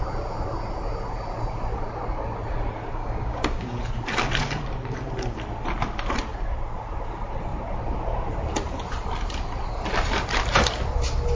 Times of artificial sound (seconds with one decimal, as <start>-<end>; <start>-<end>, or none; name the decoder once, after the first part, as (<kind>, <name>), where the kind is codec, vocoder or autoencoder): 3.0-3.8 (codec, DAC)